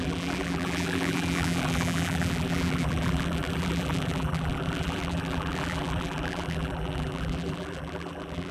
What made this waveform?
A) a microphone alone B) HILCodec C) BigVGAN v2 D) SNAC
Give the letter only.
C